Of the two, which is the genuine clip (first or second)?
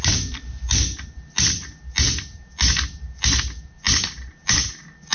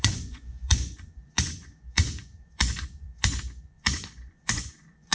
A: first